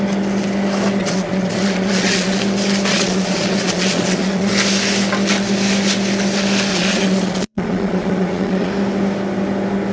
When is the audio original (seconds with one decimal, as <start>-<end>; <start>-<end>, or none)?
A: 0.0-1.0; 2.4-2.9; 4.5-6.7; 8.7-9.9